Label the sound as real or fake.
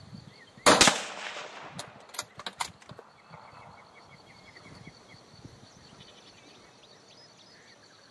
real